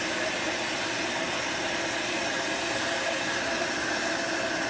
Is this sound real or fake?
real